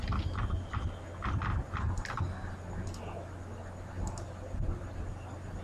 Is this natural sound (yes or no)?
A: yes